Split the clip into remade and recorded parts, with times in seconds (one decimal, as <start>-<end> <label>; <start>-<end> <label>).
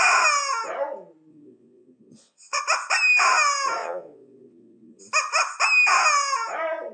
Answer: 0.0-1.3 recorded; 1.3-2.6 remade; 2.6-3.8 recorded; 3.8-5.0 remade; 5.0-6.9 recorded